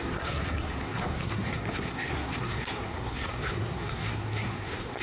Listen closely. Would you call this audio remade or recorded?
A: remade